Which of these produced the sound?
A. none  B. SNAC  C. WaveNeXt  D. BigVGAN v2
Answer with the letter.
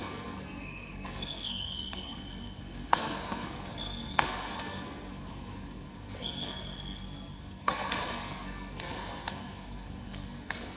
B